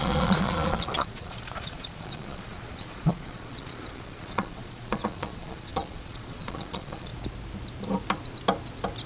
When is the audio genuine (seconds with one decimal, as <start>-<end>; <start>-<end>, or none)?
7.1-9.1